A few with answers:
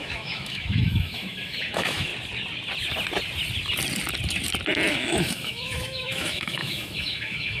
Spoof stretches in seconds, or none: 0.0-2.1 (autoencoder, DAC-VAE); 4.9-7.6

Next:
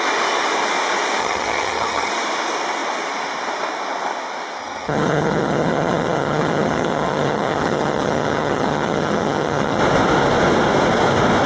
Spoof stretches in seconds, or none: 1.2-2.1 (vocoder, HiFi-GAN); 4.6-9.8

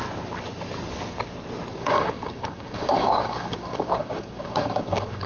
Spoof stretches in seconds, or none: 1.7-5.3 (codec, DAC)

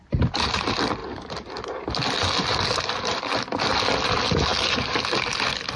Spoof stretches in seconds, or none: none